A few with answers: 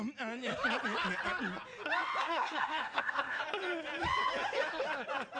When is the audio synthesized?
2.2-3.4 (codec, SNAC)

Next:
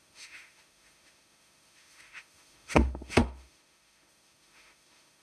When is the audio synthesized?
0.0-5.2 (autoencoder, DAC-VAE)

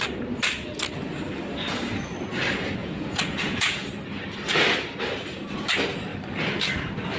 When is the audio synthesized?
2.8-3.9 (vocoder, Vocos)

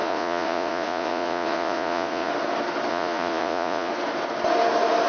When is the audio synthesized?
0.0-2.3 (vocoder, Vocos); 2.9-3.9

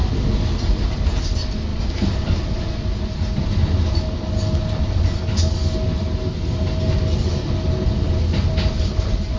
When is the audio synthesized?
none

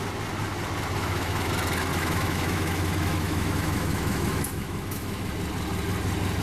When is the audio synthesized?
1.0-1.5 (autoencoder, DAC-VAE); 1.9-5.3

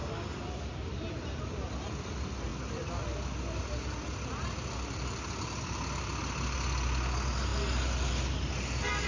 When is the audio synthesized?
none

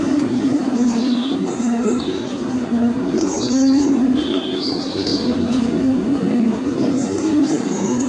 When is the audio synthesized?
0.0-8.1 (codec, SNAC)